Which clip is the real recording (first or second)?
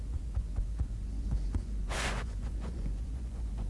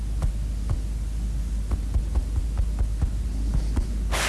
second